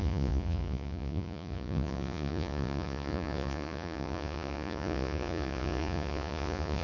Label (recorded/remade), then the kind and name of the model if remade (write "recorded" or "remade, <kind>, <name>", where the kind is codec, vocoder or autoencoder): remade, vocoder, Vocos